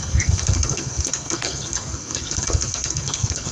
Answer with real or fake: fake